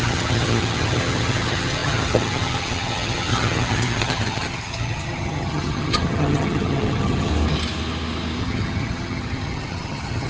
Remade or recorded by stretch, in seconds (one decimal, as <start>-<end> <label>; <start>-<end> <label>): 0.0-7.3 remade; 7.3-8.4 recorded; 8.4-10.3 remade